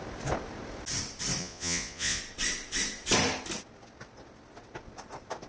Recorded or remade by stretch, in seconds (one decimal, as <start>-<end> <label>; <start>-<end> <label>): 0.0-1.4 recorded; 1.4-2.2 remade; 2.2-5.5 recorded